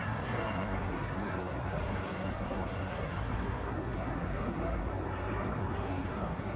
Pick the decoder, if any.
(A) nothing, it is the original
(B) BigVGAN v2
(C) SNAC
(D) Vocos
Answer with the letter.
C